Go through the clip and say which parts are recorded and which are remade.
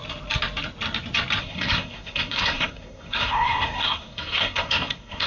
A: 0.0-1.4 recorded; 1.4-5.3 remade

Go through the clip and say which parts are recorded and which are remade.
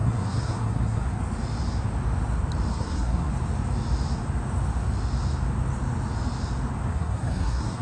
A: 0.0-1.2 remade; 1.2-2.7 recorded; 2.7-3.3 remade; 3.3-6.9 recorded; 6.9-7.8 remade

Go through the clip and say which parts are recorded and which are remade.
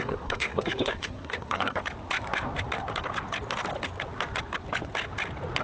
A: 0.0-1.8 remade; 1.8-5.6 recorded